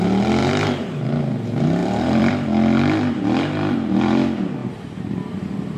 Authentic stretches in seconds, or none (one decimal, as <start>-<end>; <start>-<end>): 0.0-1.8; 2.3-4.6